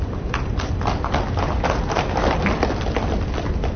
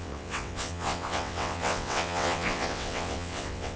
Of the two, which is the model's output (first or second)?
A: second